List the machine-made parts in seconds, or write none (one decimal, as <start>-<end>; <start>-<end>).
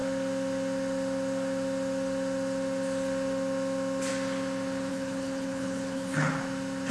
4.9-6.3